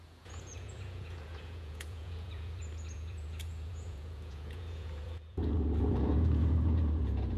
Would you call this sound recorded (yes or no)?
no